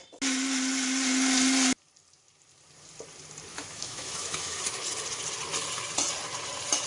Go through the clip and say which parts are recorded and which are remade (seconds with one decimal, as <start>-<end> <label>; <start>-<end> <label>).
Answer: 0.0-3.5 recorded; 3.5-4.6 remade; 4.6-6.9 recorded